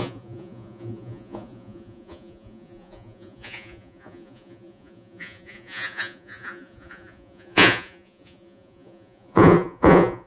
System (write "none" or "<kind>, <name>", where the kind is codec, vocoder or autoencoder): vocoder, Vocos